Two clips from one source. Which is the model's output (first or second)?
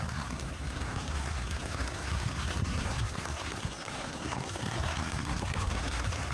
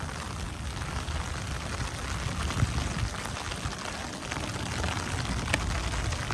first